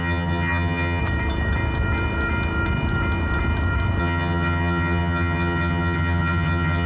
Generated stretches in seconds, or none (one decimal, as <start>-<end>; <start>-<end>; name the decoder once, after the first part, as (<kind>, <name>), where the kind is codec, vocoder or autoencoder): 0.0-1.0 (vocoder, HiFi-GAN); 4.0-6.9